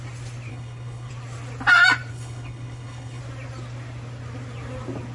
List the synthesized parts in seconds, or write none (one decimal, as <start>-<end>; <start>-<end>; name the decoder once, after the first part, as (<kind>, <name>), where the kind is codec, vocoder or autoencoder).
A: 0.5-1.1 (codec, HILCodec); 2.1-3.2